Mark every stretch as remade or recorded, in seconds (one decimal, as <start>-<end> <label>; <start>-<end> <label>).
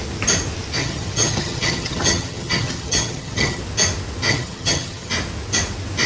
0.0-0.8 recorded; 0.8-3.6 remade; 3.6-4.3 recorded; 4.3-5.1 remade; 5.1-6.1 recorded